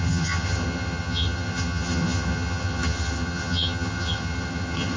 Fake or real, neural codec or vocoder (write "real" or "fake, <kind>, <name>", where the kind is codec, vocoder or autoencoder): fake, vocoder, HiFi-GAN